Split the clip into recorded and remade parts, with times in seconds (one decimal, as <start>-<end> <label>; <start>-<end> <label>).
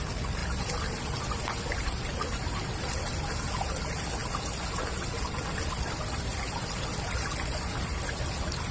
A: 0.0-8.7 recorded